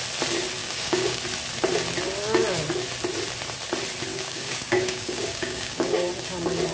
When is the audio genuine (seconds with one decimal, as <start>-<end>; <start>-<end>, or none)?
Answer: 0.0-0.6; 1.2-4.1; 6.1-6.7